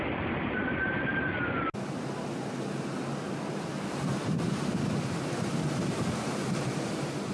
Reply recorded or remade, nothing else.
recorded